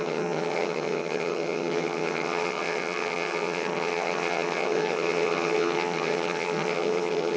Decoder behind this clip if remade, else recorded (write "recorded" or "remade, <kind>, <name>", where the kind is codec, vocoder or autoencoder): remade, vocoder, HiFi-GAN